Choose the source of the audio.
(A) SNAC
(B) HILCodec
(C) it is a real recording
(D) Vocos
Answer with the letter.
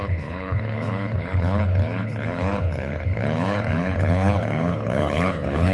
B